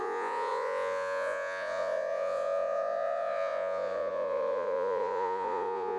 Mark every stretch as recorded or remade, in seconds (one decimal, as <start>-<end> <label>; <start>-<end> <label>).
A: 0.0-6.0 remade